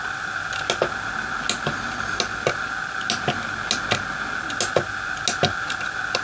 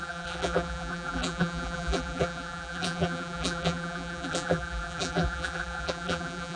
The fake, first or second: second